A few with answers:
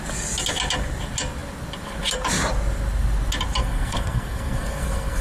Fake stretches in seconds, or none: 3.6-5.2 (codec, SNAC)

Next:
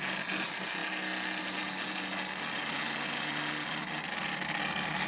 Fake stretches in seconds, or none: none

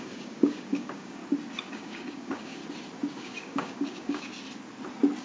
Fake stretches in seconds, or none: 0.0-1.2 (codec, DAC); 1.7-2.6; 3.1-4.3

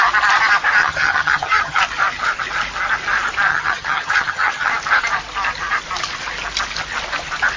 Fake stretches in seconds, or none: 0.8-1.8 (vocoder, HiFi-GAN); 3.5-4.7